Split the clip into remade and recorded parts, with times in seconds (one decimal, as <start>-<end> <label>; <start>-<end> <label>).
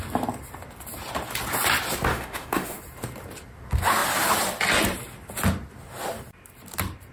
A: 0.0-2.1 recorded; 2.1-2.8 remade; 2.8-7.1 recorded